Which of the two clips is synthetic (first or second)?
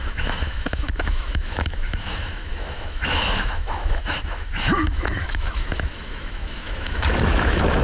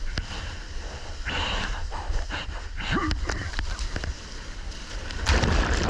first